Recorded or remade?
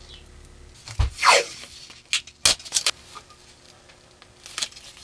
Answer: recorded